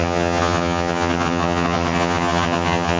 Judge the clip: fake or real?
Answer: fake